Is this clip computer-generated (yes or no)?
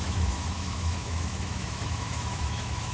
yes